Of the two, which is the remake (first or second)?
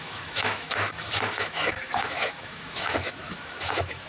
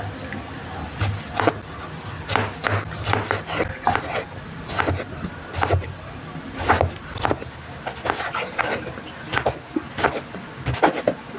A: first